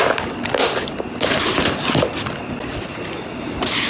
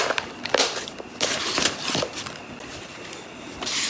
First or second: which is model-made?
second